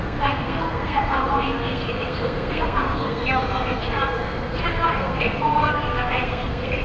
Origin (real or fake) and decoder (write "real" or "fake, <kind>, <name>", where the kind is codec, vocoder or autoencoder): fake, codec, SNAC